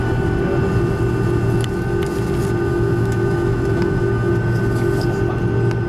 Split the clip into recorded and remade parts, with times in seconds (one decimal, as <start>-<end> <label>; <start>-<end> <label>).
0.0-2.7 recorded; 2.7-4.3 remade; 4.3-5.9 recorded